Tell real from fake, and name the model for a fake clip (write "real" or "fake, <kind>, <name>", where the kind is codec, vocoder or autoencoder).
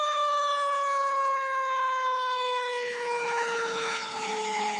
fake, codec, HILCodec